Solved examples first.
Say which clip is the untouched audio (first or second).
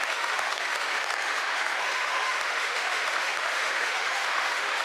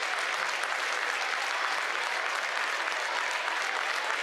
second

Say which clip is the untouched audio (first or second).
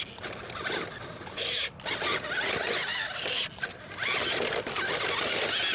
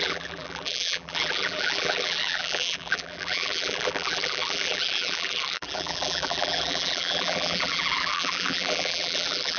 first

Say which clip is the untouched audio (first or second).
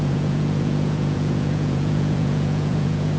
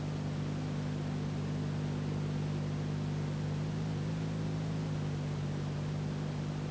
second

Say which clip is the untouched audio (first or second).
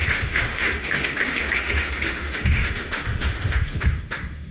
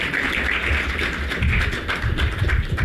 second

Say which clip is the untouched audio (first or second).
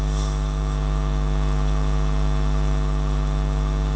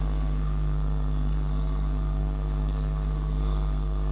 first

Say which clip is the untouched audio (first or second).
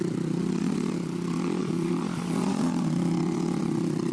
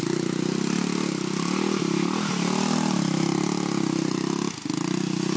second